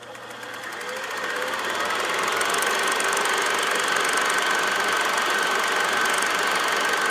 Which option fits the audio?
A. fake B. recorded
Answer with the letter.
B